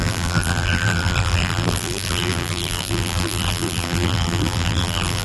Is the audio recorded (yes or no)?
no